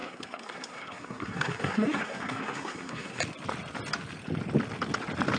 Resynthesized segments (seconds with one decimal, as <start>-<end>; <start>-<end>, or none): 0.0-3.2